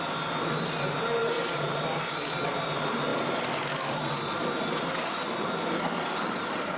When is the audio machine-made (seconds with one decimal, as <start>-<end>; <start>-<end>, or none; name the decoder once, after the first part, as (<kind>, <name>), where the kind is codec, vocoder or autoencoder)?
1.2-2.3 (vocoder, BigVGAN v2); 3.1-4.5